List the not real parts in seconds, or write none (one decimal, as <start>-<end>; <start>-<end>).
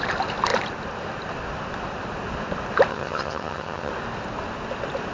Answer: 2.9-3.9